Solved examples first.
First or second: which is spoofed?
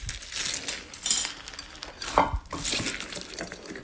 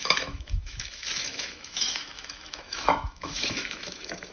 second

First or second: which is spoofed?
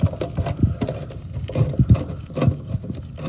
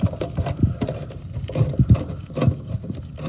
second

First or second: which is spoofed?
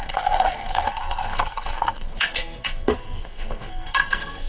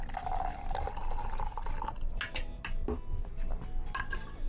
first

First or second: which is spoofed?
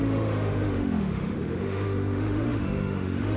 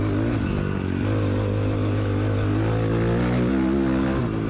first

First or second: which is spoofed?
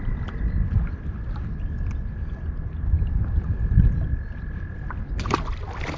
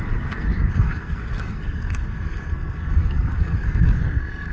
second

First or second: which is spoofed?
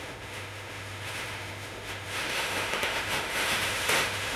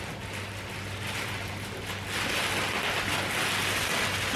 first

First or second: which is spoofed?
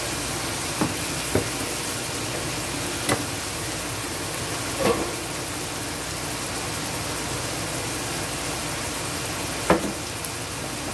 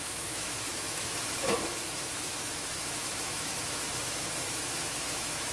second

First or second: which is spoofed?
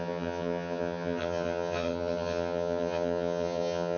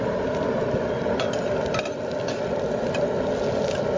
first